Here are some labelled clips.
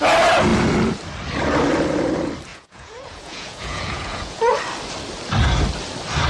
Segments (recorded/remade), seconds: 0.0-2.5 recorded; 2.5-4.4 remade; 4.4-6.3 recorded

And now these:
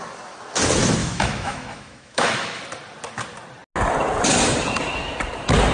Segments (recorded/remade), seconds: 0.0-1.0 recorded; 1.0-2.6 remade; 2.6-5.7 recorded

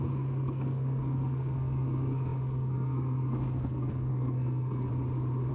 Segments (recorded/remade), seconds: 0.0-4.9 remade; 4.9-5.5 recorded

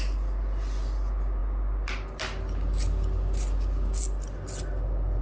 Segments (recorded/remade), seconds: 0.0-5.2 recorded

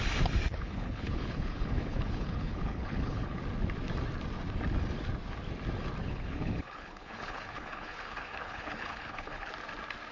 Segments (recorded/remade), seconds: 0.0-0.5 recorded; 0.5-3.4 remade; 3.4-6.0 recorded; 6.0-9.5 remade; 9.5-10.1 recorded